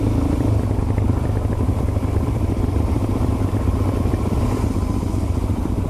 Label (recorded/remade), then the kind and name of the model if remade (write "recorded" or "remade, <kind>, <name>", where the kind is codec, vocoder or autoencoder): remade, vocoder, BigVGAN v2